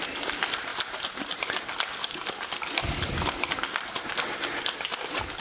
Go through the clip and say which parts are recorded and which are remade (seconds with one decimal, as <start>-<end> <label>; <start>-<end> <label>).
0.0-5.4 recorded